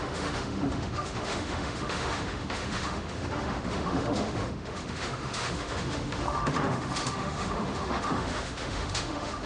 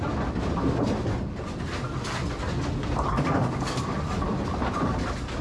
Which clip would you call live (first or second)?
second